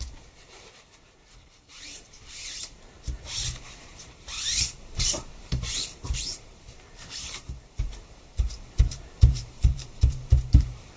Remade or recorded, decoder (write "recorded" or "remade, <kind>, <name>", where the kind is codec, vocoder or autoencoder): remade, vocoder, BigVGAN v2